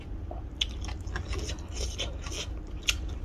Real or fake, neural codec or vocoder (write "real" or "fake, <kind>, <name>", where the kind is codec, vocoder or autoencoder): real